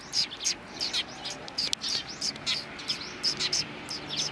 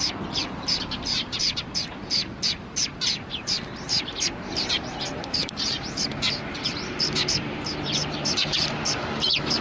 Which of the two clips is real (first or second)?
first